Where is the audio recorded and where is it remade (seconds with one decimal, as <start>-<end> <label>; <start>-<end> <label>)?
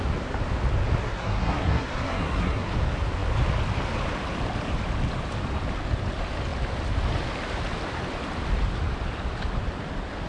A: 0.0-1.0 recorded; 1.0-2.7 remade; 2.7-10.3 recorded